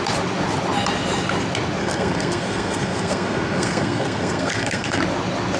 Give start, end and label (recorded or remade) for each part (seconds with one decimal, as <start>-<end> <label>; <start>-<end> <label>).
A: 0.0-1.8 recorded; 1.8-5.0 remade; 5.0-5.6 recorded